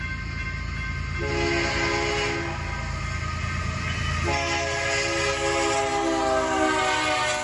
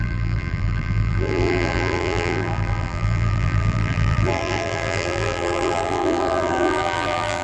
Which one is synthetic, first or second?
second